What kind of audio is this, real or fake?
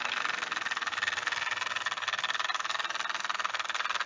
real